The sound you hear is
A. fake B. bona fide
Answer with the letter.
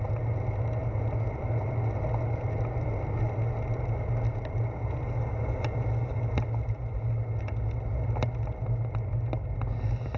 B